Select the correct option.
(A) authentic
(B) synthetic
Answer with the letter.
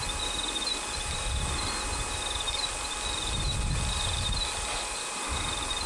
A